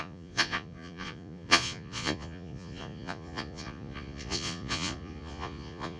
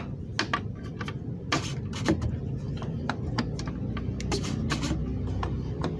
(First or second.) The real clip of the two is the second